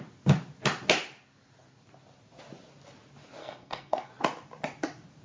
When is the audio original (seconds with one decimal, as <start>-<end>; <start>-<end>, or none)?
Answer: 0.0-3.4; 4.1-5.2